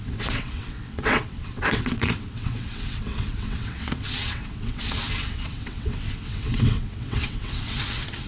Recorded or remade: remade